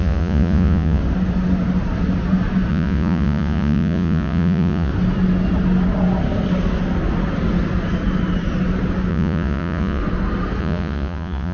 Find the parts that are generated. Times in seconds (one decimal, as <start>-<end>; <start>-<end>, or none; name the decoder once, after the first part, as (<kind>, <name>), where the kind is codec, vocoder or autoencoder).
0.0-1.0 (vocoder, Vocos); 2.7-4.9; 9.1-10.0; 10.6-11.5